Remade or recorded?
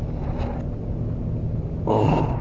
recorded